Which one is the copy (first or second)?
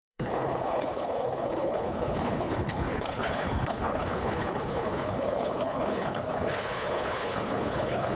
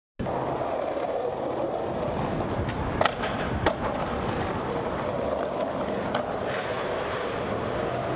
first